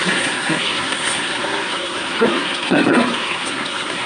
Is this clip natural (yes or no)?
no